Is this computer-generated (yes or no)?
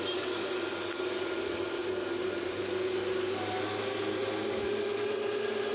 no